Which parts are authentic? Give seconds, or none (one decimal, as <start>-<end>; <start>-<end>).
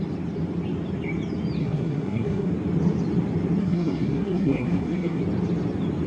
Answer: 0.0-1.6; 2.5-3.6; 5.2-6.1